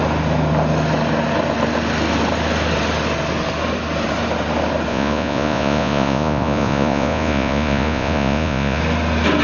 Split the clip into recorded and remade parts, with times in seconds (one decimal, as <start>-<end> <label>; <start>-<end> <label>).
0.0-4.9 recorded; 4.9-8.8 remade; 8.8-9.4 recorded